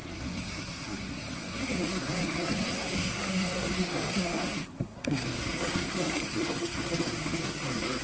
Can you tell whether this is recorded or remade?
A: remade